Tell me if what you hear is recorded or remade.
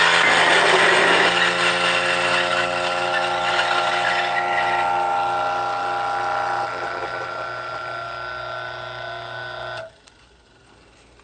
recorded